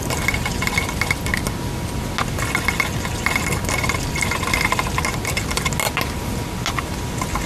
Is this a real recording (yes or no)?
yes